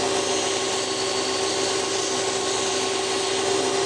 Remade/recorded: recorded